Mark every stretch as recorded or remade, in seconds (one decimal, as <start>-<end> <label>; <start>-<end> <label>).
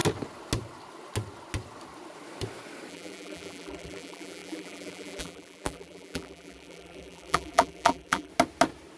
0.0-2.9 recorded; 2.9-8.3 remade; 8.3-9.0 recorded